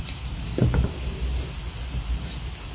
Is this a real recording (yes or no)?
yes